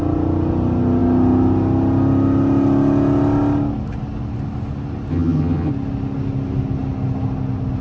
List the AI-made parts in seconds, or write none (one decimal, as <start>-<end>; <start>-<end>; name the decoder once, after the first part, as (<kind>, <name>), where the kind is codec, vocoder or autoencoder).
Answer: 5.1-5.7 (vocoder, HiFi-GAN)